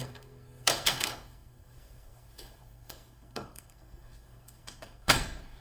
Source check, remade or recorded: remade